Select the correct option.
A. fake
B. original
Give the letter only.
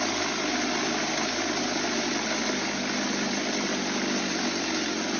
B